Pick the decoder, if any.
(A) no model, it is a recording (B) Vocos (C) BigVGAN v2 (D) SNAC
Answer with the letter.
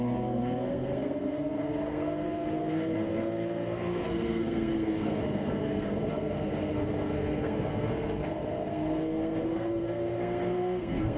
D